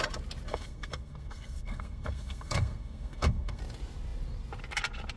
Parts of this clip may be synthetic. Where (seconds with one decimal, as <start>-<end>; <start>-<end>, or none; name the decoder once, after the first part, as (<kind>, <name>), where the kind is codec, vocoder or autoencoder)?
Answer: 0.5-3.6 (codec, SNAC)